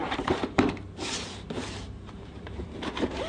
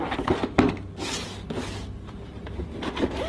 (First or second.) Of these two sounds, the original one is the second